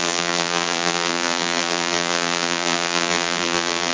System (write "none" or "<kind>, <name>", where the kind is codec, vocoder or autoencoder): vocoder, BigVGAN v2